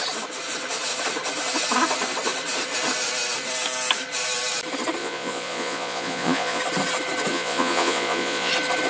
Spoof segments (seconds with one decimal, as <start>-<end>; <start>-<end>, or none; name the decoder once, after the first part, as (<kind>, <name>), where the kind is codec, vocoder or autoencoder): 5.0-6.6 (vocoder, Vocos); 7.3-8.5